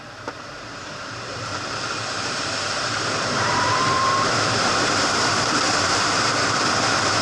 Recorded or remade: remade